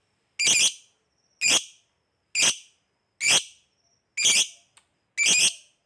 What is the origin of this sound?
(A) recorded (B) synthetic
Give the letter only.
A